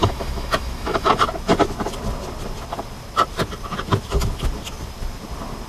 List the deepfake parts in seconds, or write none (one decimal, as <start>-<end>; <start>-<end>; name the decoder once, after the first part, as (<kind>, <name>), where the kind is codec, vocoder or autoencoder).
0.0-1.1 (autoencoder, DAC-VAE)

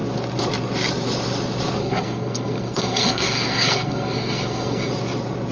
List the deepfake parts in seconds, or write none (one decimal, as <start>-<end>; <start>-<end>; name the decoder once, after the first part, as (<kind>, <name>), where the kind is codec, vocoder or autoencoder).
1.8-4.9 (codec, SNAC)

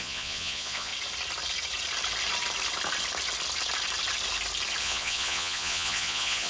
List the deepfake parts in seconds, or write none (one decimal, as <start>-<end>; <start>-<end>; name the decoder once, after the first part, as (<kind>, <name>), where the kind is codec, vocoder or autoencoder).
0.0-0.9 (vocoder, Vocos); 4.8-6.5

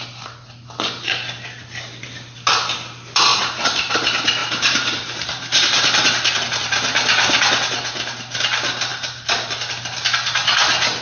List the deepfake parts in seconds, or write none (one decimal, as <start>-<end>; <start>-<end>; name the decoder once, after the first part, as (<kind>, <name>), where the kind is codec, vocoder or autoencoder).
3.3-3.9 (vocoder, BigVGAN v2); 4.4-6.3; 8.9-9.5

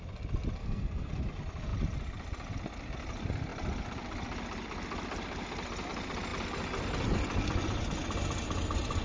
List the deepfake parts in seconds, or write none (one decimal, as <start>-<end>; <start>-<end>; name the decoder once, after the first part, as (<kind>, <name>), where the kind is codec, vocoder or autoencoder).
0.6-1.1 (codec, SNAC)

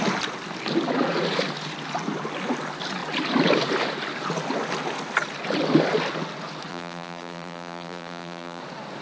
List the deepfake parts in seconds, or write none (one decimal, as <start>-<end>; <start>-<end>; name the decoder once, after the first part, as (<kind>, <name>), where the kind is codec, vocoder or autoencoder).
6.7-8.6 (vocoder, BigVGAN v2)

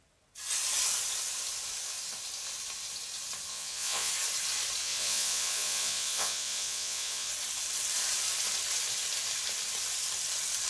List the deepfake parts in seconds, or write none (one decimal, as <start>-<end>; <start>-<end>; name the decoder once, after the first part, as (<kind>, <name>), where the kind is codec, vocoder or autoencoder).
3.5-4.1 (vocoder, Vocos); 4.8-7.3